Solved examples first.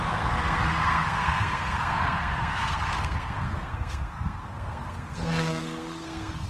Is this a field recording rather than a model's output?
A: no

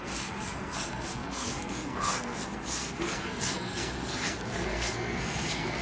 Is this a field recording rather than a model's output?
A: no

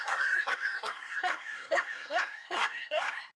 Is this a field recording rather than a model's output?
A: no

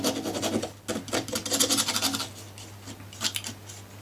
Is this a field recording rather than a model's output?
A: yes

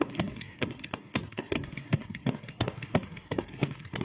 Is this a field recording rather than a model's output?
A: no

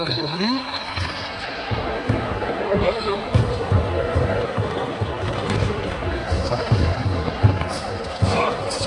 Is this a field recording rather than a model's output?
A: no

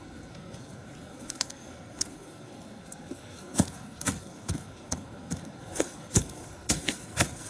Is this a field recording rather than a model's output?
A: no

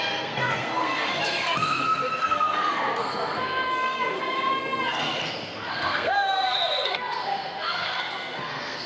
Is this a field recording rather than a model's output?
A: no